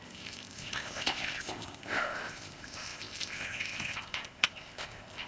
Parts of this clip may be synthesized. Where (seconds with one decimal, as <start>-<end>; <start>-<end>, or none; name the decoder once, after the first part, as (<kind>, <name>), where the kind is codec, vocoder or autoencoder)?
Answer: 0.0-5.3 (codec, ZipCodec)